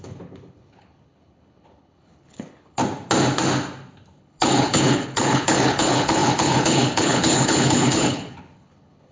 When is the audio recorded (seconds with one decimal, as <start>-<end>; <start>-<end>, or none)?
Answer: 2.8-4.2

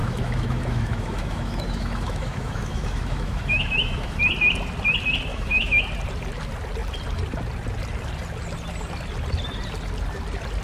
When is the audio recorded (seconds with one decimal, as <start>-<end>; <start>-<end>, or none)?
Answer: 4.2-5.3; 5.8-10.6

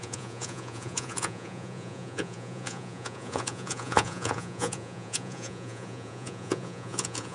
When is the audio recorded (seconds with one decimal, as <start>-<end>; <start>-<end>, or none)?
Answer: none

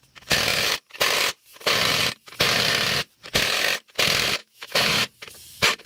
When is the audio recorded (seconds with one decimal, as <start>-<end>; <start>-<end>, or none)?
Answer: 0.0-4.4; 5.0-5.9

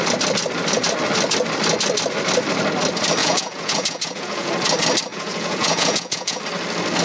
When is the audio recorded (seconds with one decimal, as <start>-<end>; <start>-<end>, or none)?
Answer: 0.0-3.2; 4.5-5.1; 6.4-7.0

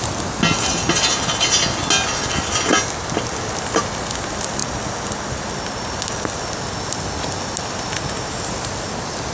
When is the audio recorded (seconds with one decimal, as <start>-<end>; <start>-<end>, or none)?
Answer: 0.0-9.3

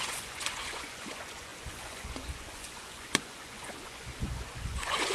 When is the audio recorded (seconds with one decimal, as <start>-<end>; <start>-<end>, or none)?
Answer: none